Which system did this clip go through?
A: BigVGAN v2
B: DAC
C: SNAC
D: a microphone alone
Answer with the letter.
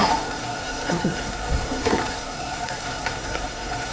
C